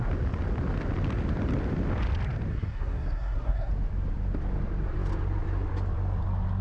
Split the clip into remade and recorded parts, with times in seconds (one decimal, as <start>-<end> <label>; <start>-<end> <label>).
0.0-2.5 recorded; 2.5-3.7 remade; 3.7-6.6 recorded